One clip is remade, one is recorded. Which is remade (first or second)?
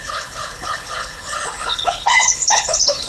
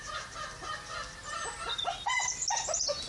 first